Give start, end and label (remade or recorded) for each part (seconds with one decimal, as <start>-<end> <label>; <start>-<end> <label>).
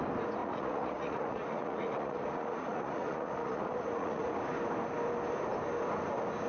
0.0-0.4 recorded; 0.4-4.3 remade; 4.3-6.5 recorded